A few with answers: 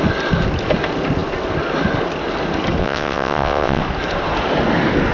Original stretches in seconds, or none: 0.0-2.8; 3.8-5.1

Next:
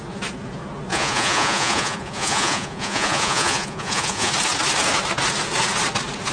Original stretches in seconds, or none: 0.0-0.9; 4.3-6.3

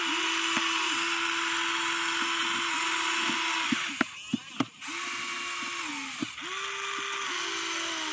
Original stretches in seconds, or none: 0.0-8.1

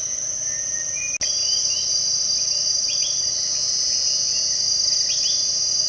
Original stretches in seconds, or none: 0.0-5.9

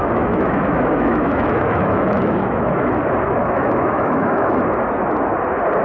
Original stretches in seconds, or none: 2.8-3.4; 4.6-5.8